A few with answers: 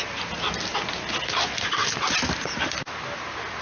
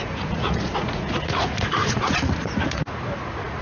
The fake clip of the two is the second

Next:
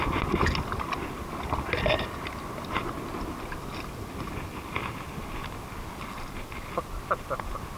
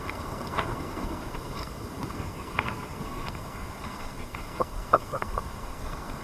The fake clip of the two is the second